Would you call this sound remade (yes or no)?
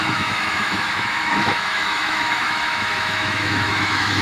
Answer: yes